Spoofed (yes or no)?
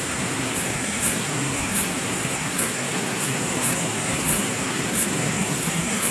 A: yes